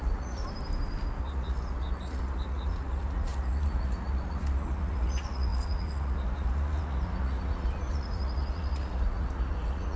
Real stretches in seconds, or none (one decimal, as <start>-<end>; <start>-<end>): 0.4-1.2